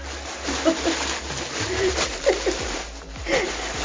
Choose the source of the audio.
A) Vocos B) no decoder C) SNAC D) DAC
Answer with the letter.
B